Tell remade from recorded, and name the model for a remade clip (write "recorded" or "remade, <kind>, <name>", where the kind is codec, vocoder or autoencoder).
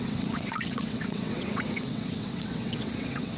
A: remade, vocoder, WaveNeXt